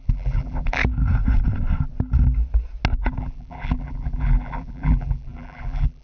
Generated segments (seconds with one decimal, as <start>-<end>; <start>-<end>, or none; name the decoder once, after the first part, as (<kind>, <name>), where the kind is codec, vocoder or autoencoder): 0.0-0.8 (vocoder, BigVGAN v2); 3.2-6.0